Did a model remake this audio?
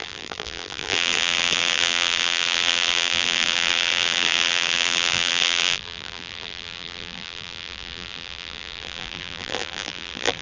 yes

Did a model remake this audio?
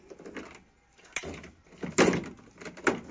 no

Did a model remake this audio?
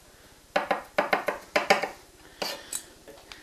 no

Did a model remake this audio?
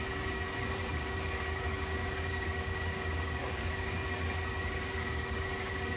yes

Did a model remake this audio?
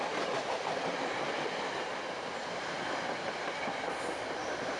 no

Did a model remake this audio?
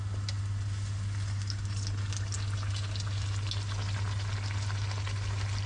no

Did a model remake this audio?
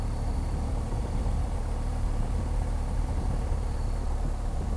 yes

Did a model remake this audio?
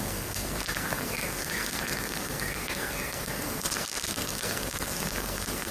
yes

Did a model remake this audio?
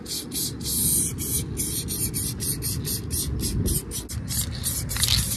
no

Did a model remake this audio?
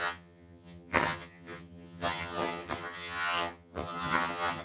yes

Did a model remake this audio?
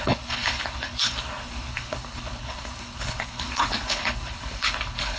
yes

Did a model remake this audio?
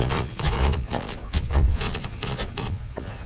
yes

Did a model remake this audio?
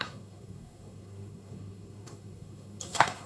yes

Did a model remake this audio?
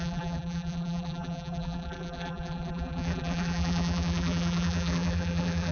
yes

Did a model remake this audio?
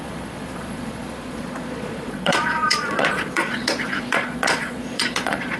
yes